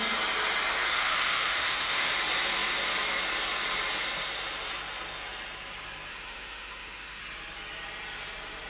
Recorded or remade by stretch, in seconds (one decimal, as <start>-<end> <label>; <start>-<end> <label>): 0.0-0.9 recorded; 0.9-2.1 remade; 2.1-6.1 recorded; 6.1-7.2 remade; 7.2-8.7 recorded